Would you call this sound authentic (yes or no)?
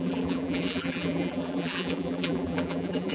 no